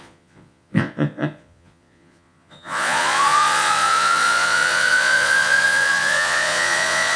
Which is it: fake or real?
fake